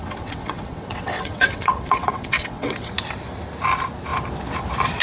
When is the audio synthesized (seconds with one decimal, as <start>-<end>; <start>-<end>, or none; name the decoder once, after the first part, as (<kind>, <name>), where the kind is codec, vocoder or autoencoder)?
0.0-2.9 (vocoder, WaveNeXt)